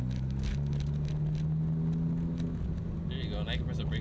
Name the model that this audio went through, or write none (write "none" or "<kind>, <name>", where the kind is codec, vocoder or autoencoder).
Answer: none